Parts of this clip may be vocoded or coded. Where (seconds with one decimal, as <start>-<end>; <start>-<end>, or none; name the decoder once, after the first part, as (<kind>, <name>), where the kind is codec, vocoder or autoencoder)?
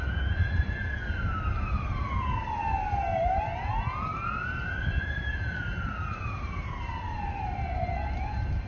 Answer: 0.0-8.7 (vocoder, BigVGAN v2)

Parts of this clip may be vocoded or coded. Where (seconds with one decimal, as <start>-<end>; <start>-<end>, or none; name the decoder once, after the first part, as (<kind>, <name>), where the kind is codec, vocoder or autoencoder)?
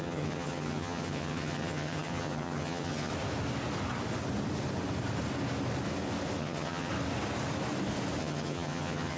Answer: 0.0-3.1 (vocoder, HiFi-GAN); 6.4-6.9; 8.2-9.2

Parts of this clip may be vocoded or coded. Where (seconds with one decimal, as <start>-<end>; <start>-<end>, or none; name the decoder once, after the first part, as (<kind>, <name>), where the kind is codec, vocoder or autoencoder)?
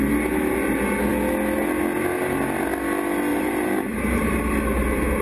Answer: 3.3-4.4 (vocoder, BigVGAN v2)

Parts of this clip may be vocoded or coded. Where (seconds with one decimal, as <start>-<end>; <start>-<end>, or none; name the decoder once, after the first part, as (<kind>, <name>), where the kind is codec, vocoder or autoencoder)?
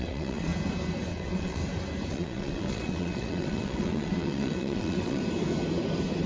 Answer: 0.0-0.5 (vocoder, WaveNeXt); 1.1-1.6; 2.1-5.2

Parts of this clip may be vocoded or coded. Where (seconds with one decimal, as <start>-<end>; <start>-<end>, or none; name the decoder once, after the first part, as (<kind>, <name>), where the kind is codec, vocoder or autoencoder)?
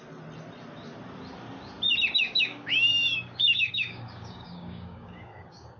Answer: 2.2-5.8 (codec, DAC)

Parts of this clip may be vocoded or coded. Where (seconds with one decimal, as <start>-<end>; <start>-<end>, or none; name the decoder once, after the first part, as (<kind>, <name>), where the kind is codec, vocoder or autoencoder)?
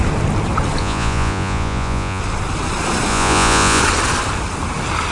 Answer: 0.8-2.2 (vocoder, Vocos); 3.1-3.8